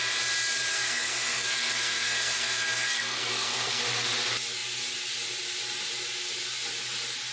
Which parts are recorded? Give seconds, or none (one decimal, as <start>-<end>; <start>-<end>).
0.0-0.7; 3.8-7.3